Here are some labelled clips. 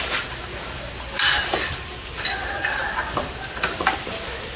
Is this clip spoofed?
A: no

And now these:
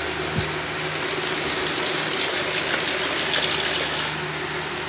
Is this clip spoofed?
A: no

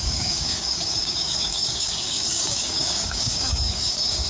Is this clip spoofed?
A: yes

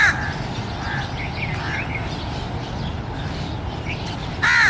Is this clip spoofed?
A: no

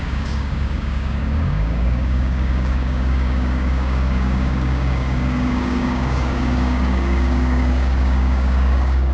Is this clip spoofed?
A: yes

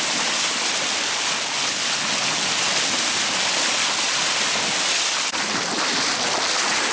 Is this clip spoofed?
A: no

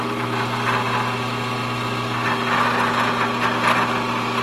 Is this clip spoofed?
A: no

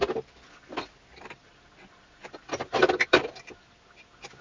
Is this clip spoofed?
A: no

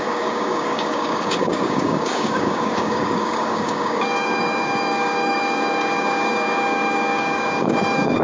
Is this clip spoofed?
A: yes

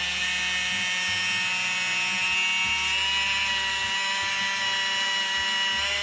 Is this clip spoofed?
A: no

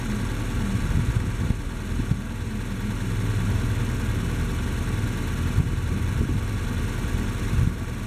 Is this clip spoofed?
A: no